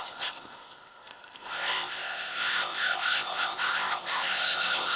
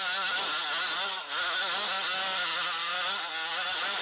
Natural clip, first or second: second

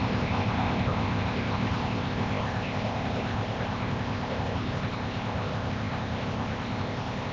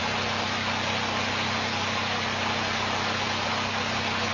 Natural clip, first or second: second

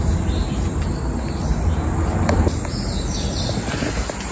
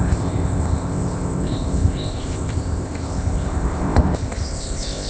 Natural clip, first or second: first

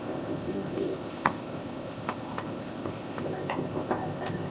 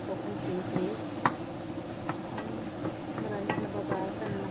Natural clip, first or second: second